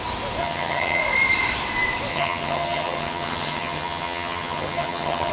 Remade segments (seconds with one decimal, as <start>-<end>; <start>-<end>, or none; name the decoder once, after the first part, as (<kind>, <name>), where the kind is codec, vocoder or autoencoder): 0.4-1.0 (vocoder, HiFi-GAN); 2.1-5.3